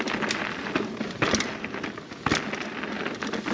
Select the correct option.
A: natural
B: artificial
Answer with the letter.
A